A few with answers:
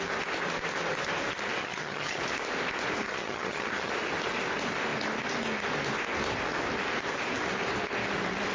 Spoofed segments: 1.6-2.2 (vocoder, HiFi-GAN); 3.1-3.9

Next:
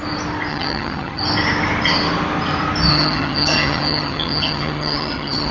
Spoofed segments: 0.5-1.2 (vocoder, HiFi-GAN); 2.9-5.5

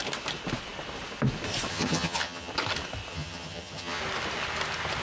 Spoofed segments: 1.7-2.5 (vocoder, HiFi-GAN); 3.1-4.0

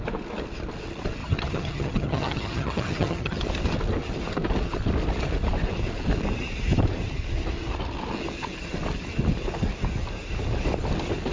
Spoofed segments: 1.2-3.4 (vocoder, HiFi-GAN)

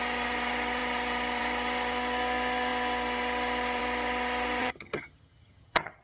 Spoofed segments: 4.6-6.0 (vocoder, HiFi-GAN)

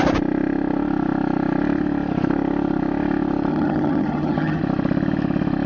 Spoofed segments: 3.5-4.6 (vocoder, HiFi-GAN)

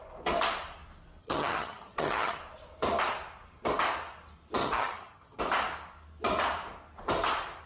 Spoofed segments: 1.2-2.4 (vocoder, HiFi-GAN); 4.6-5.4